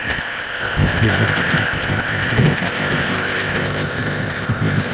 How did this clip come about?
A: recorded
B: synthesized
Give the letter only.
B